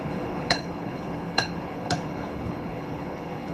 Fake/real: fake